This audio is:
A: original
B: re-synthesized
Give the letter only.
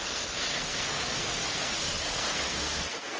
B